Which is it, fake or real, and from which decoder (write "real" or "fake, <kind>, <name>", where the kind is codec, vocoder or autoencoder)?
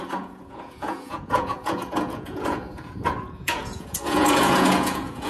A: fake, vocoder, Vocos